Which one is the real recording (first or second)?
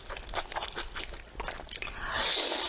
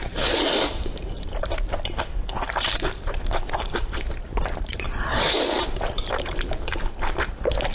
first